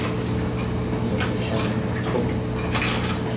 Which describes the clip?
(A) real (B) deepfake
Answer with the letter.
A